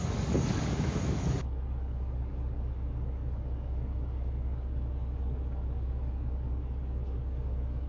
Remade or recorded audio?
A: remade